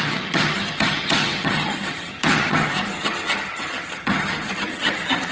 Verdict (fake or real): fake